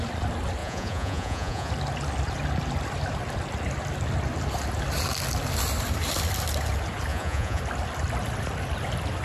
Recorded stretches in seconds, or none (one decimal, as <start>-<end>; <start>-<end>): 0.0-0.6; 1.7-7.1; 7.6-9.2